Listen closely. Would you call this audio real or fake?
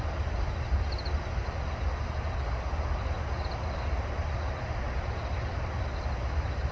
real